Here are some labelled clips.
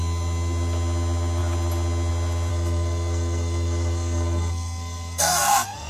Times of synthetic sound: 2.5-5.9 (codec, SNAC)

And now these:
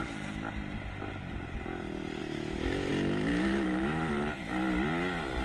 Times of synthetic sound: 2.2-2.9 (autoencoder, DAC-VAE); 3.3-4.1

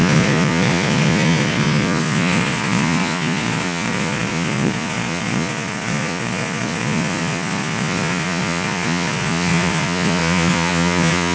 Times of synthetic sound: 0.0-11.3 (vocoder, Vocos)

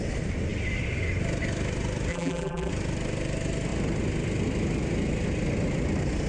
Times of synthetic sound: 2.1-2.7 (vocoder, BigVGAN v2)

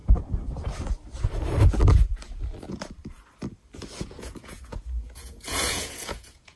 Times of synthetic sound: 4.0-6.6 (vocoder, Vocos)

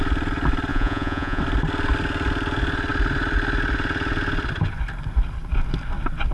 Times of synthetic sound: 0.7-1.4 (vocoder, Vocos)